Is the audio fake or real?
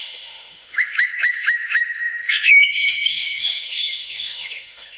fake